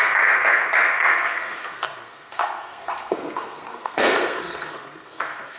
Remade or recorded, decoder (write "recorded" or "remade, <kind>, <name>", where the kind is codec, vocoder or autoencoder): remade, codec, SNAC